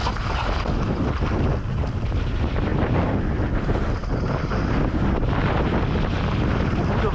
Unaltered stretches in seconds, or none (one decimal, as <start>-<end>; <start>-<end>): 0.0-7.1